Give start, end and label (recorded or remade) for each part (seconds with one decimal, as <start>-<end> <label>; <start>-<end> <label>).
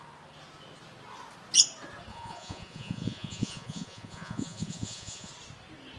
0.0-2.1 recorded; 2.1-5.3 remade; 5.3-6.0 recorded